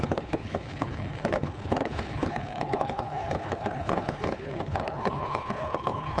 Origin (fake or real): fake